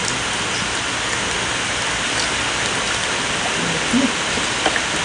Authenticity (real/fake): real